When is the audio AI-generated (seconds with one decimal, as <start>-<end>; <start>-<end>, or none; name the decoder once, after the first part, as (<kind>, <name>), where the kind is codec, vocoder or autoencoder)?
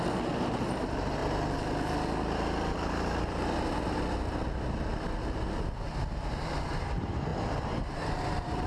none